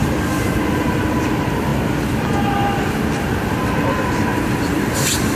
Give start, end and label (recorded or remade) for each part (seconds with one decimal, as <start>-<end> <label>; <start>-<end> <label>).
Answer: 0.0-4.3 recorded; 4.3-5.4 remade